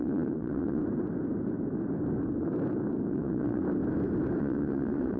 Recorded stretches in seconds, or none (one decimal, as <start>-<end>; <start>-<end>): 0.8-3.1; 3.6-4.4